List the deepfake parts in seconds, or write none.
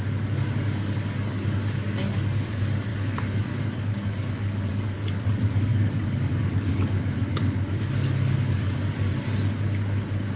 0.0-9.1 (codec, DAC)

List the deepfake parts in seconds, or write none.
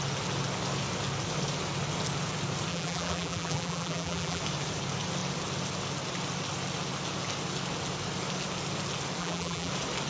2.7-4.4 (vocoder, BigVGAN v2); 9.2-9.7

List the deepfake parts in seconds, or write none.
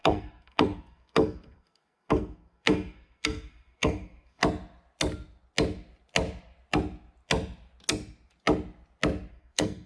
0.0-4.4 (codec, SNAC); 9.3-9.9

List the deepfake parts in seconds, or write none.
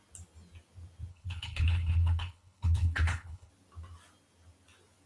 1.1-3.5 (codec, HILCodec)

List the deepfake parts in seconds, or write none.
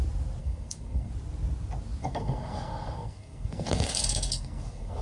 0.4-1.1 (codec, SNAC); 2.0-5.0